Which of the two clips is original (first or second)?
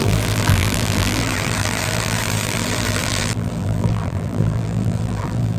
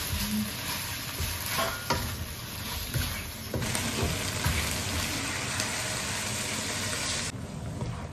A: second